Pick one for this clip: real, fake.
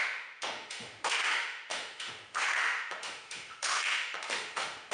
fake